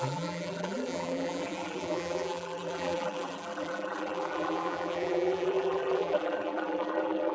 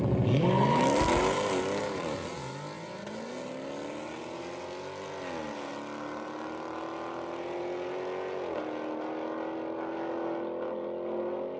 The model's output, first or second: first